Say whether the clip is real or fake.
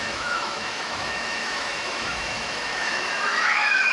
fake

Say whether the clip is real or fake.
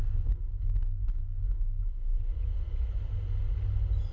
real